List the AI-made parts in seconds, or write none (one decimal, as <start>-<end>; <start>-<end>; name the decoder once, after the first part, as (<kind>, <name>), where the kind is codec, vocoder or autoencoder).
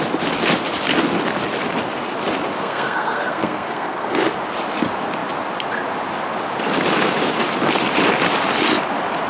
2.5-4.2 (codec, SNAC)